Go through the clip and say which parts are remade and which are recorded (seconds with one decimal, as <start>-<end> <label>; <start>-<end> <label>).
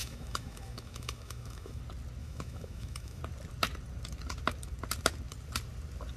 0.0-1.8 remade; 1.8-2.2 recorded; 2.2-3.2 remade; 3.2-6.2 recorded